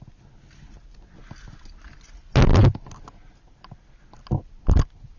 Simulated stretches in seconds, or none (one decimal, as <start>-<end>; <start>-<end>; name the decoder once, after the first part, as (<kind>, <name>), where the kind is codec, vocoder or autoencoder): none